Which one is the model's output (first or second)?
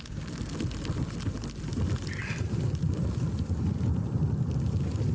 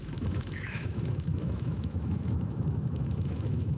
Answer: second